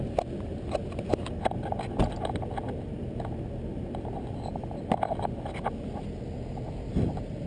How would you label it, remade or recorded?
recorded